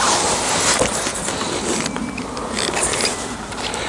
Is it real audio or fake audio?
real